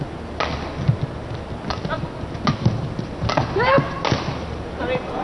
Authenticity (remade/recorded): recorded